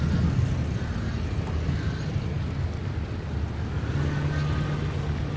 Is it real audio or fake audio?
real